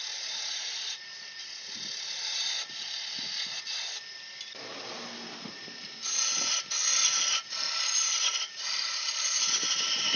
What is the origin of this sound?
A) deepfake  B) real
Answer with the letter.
B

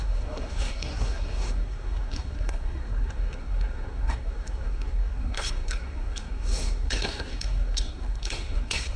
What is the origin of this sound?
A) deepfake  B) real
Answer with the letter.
A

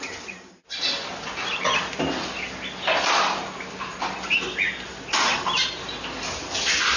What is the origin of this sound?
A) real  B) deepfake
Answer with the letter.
A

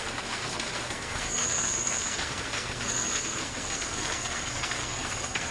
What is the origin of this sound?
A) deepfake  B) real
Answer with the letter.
A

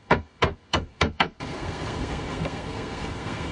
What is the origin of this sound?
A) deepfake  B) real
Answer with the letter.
A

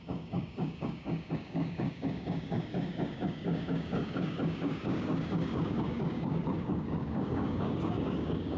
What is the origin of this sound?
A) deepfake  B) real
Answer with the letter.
A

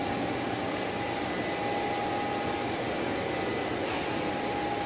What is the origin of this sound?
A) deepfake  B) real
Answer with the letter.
B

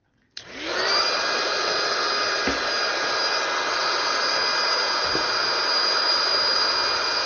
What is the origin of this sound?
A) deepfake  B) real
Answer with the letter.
A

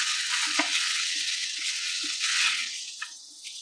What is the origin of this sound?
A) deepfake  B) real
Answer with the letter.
A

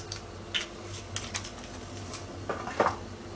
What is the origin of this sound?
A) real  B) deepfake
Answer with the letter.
A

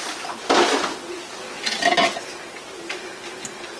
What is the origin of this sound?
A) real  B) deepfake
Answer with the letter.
A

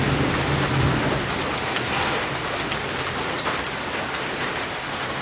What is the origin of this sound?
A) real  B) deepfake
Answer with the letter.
A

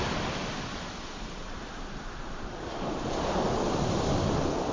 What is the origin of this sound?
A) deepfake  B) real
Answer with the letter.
B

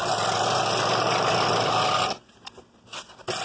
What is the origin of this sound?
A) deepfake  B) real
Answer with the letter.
B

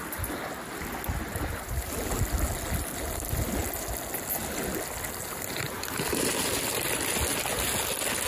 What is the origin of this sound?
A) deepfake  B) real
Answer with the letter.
B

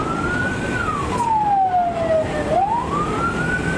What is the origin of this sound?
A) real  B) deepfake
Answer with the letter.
A